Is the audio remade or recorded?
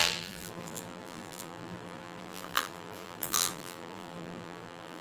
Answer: remade